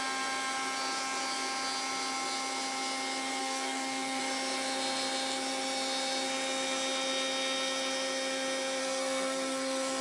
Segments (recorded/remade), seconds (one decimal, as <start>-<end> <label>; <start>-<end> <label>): 0.0-3.4 recorded; 3.4-4.2 remade; 4.2-8.8 recorded; 8.8-10.0 remade